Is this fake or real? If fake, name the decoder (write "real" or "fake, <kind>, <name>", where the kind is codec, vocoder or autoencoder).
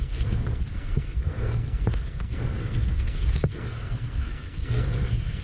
fake, codec, SNAC